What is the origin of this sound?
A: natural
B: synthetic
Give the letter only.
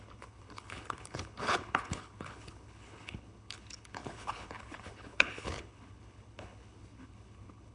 B